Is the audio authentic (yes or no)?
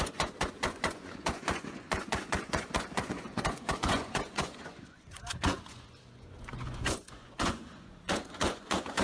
no